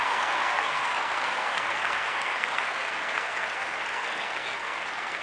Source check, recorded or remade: remade